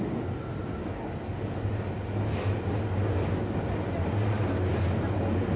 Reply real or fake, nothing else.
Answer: real